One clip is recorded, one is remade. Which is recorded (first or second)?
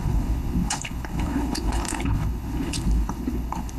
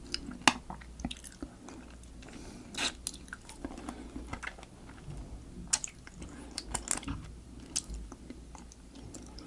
second